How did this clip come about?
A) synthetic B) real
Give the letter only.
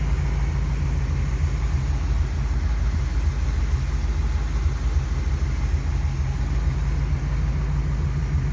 B